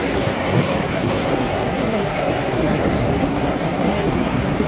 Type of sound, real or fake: fake